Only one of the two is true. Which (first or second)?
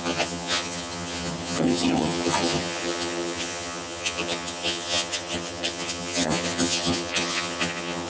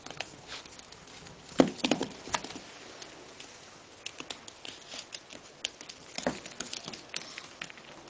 second